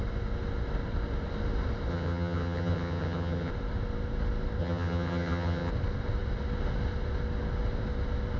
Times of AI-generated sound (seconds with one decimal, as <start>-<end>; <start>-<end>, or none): 1.9-3.5; 4.6-5.7